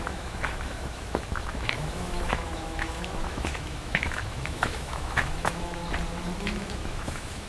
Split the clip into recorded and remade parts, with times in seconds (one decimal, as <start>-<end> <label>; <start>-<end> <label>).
0.0-5.8 remade; 5.8-6.4 recorded; 6.4-7.5 remade

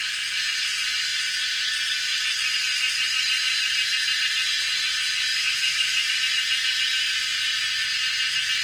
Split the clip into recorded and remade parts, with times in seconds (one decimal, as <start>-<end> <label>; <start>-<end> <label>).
0.0-5.3 recorded; 5.3-6.1 remade; 6.1-8.6 recorded